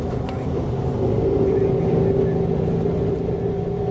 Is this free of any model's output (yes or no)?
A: yes